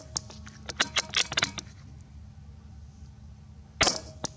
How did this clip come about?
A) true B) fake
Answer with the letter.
A